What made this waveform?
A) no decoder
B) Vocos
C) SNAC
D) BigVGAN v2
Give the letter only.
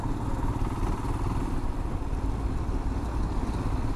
A